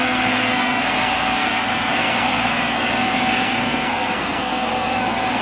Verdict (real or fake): fake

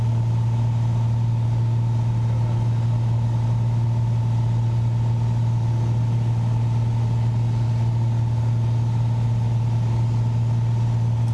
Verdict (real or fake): real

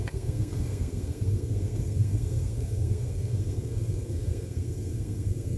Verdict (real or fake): fake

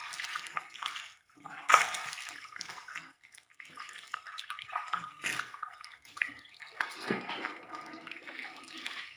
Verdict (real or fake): fake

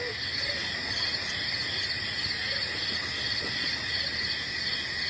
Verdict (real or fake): real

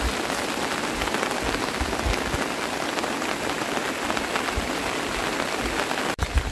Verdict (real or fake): real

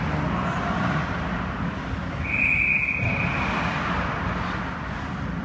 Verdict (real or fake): real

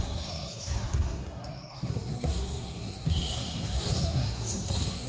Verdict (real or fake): fake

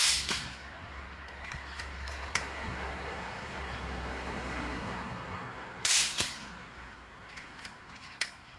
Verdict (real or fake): fake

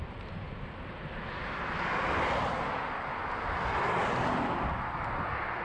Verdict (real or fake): real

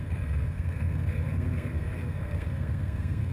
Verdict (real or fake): fake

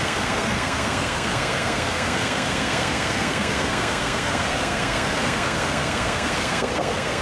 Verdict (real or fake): fake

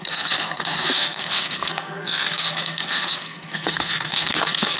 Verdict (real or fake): fake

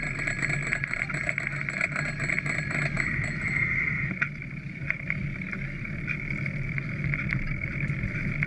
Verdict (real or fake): real